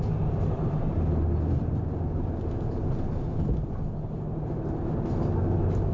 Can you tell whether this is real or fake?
real